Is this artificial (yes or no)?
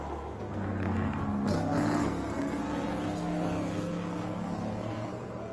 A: yes